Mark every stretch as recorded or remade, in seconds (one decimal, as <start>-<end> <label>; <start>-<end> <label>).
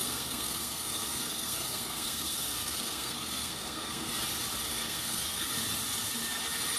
0.0-4.1 remade; 4.1-4.7 recorded; 4.7-5.5 remade; 5.5-6.8 recorded